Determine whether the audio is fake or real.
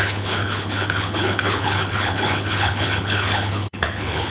fake